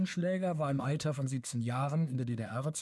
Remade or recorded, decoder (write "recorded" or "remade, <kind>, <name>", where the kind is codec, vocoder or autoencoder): remade, codec, SNAC